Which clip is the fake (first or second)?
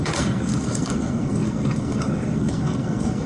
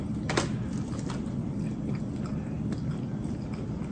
first